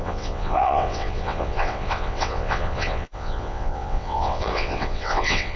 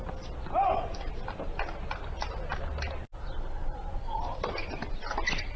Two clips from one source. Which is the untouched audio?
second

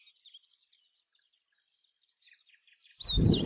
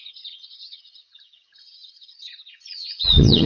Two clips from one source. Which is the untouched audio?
first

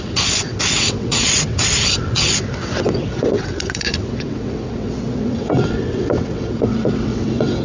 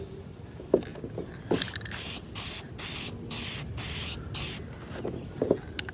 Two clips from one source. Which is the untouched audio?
second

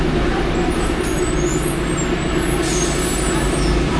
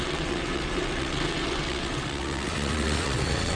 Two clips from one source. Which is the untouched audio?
first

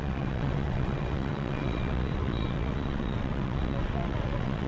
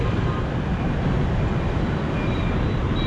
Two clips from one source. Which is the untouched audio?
second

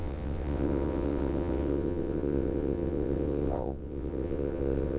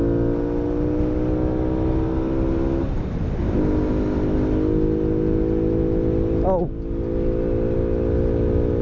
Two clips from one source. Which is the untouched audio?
second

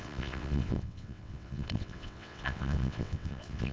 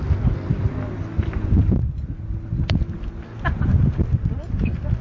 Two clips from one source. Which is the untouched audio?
second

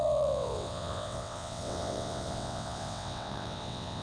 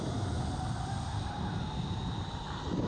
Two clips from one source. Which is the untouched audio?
second